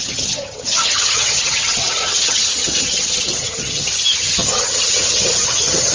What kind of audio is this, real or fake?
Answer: fake